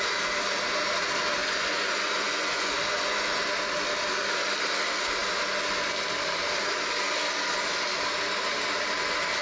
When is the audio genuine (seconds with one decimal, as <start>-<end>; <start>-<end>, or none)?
0.0-1.4; 3.4-9.4

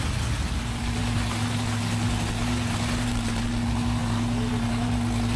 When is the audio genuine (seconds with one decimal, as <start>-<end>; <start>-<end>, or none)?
0.0-5.4

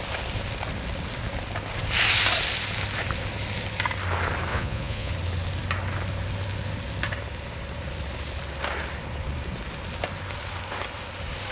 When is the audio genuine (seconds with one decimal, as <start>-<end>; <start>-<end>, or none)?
0.0-4.5; 5.1-11.5

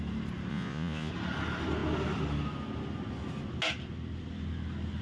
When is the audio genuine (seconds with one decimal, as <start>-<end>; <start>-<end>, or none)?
0.0-0.5; 1.1-5.0

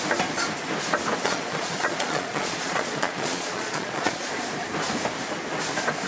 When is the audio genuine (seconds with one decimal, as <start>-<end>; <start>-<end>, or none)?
0.0-1.2; 4.3-6.1

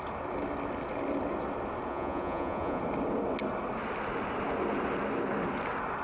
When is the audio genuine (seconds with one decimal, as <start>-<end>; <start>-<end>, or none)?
0.0-1.9; 2.8-6.0

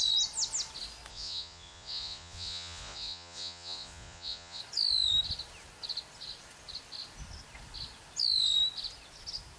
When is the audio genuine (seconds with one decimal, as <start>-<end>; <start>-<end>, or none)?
0.0-1.1; 4.6-9.6